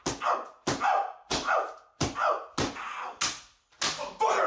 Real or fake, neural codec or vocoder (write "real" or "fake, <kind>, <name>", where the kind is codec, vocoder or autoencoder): real